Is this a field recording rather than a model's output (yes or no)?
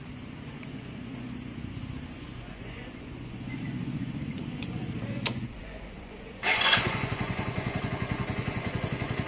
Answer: no